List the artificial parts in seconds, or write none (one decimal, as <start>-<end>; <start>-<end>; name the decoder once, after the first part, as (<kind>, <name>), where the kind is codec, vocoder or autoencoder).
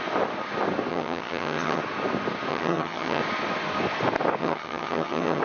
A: 0.9-1.8 (vocoder, HiFi-GAN); 2.5-3.2; 4.4-5.4